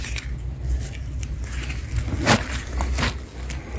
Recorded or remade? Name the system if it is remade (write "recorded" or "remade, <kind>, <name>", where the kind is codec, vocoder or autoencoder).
recorded